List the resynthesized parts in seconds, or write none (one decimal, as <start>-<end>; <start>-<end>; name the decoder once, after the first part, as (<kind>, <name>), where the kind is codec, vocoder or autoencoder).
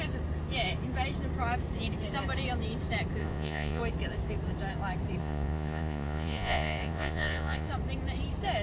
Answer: 3.2-3.8 (vocoder, Vocos); 5.2-7.7